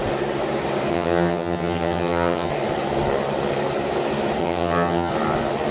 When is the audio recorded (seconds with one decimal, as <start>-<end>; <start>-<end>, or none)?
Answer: 0.0-0.9; 2.5-4.4; 5.1-5.7

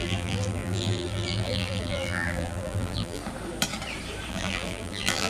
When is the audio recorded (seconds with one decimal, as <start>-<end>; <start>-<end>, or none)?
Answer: 3.2-4.3

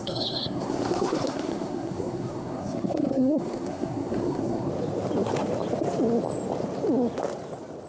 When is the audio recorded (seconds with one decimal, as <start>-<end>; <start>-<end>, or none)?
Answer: 4.7-7.9

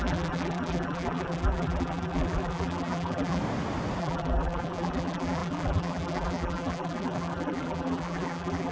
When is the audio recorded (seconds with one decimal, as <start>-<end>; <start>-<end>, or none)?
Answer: 3.4-4.0

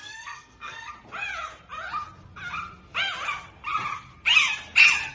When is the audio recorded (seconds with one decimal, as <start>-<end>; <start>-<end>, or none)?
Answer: 0.9-5.1

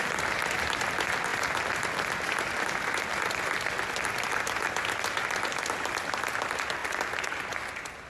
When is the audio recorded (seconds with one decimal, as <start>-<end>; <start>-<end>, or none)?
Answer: 0.0-8.1

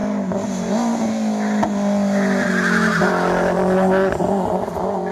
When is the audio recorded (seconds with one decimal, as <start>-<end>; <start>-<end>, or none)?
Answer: 0.0-5.1